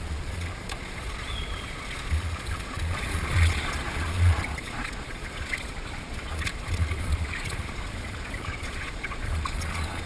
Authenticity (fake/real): fake